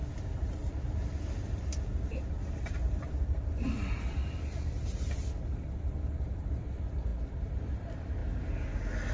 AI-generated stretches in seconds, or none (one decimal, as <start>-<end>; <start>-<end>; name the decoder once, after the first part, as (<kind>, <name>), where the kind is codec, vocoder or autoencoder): 0.0-8.2 (vocoder, BigVGAN v2)

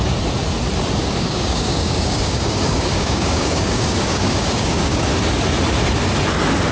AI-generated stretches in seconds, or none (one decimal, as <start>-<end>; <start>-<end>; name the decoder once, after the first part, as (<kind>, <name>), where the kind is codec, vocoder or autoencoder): 1.0-5.0 (codec, DAC)

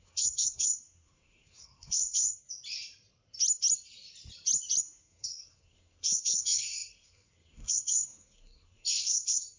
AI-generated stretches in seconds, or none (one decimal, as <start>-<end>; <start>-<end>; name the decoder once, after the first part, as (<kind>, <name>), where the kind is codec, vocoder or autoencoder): 0.0-2.4 (codec, SNAC); 4.8-9.6

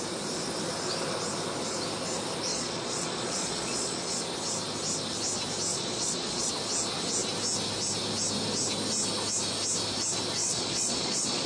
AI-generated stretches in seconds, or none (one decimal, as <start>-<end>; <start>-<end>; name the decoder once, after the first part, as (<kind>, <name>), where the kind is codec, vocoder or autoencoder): 2.5-4.2 (vocoder, Vocos); 5.7-6.5; 10.4-11.5

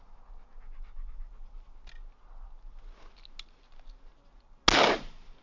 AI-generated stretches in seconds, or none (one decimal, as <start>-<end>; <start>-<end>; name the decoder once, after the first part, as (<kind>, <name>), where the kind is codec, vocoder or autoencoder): none

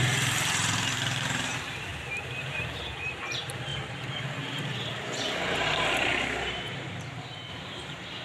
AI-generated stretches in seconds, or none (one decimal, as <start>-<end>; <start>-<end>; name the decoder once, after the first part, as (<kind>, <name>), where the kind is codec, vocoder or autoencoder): 0.0-3.7 (vocoder, BigVGAN v2); 4.6-8.2